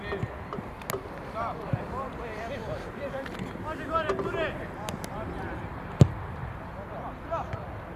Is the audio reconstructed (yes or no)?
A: yes